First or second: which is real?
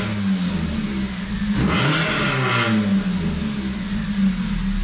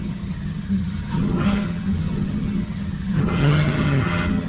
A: first